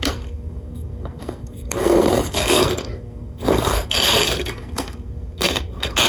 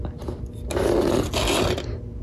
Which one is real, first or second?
second